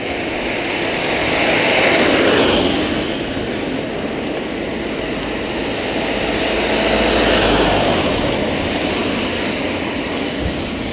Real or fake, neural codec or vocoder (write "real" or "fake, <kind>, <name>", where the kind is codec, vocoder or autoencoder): real